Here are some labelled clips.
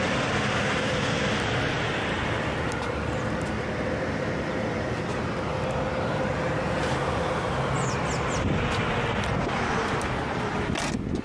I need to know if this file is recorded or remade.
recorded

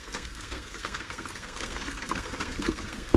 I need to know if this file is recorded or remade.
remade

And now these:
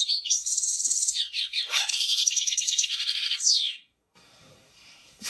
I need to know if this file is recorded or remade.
remade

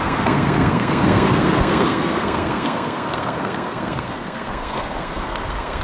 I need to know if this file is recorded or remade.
remade